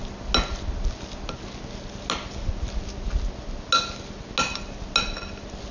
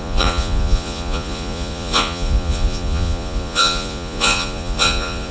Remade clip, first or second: second